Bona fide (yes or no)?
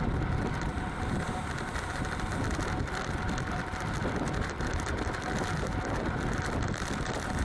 no